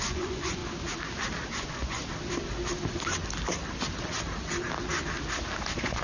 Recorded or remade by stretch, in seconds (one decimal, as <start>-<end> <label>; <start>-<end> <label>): 0.0-0.6 remade; 0.6-1.5 recorded; 1.5-2.0 remade; 2.0-5.6 recorded; 5.6-6.0 remade